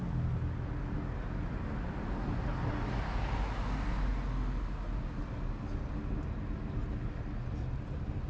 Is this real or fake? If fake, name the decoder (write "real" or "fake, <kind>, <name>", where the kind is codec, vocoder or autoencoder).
real